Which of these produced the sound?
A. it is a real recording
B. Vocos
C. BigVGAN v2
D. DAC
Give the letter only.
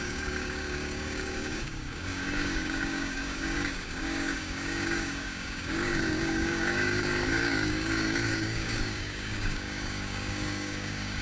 D